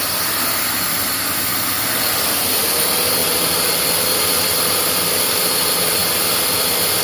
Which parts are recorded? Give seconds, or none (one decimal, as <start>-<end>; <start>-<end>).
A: 1.5-2.0; 3.2-4.0; 6.0-6.6

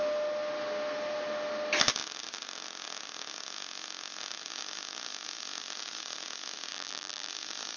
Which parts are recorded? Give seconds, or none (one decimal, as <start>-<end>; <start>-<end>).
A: 0.0-6.7; 7.3-7.8

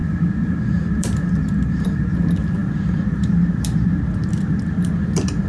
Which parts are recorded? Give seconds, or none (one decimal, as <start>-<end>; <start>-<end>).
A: 0.0-0.8

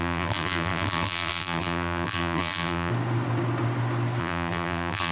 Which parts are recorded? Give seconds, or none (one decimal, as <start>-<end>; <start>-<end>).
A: 2.9-4.2

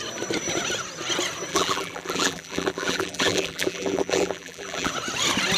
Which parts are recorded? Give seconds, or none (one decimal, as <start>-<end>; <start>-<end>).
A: 0.0-1.5; 4.9-5.6